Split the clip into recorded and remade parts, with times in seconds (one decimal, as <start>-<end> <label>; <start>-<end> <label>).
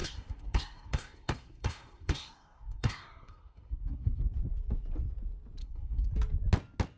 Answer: 0.0-4.2 remade; 4.2-5.6 recorded; 5.6-6.1 remade; 6.1-7.0 recorded